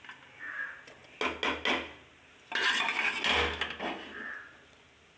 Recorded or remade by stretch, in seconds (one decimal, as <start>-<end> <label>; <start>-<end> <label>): 0.0-5.2 recorded